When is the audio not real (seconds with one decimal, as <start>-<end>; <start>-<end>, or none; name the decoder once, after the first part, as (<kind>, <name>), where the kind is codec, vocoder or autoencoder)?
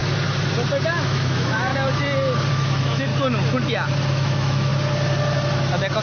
0.9-1.7 (autoencoder, DAC-VAE); 2.5-3.1; 4.1-4.7